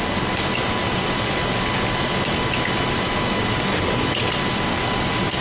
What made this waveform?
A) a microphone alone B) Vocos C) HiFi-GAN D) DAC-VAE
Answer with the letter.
A